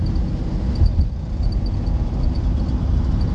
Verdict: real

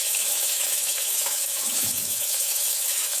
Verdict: fake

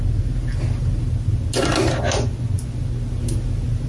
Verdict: real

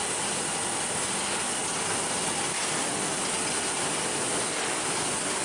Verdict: real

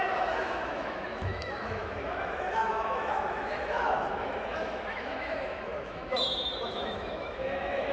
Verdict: fake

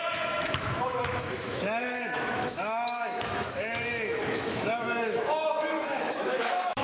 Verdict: fake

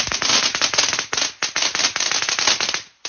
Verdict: real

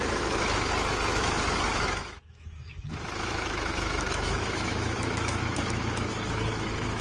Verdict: fake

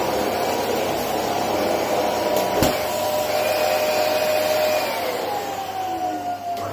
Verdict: real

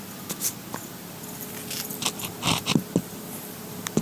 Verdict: real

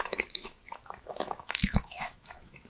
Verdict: fake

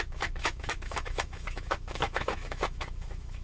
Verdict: fake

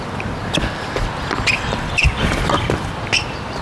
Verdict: real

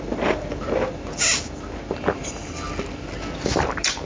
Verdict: real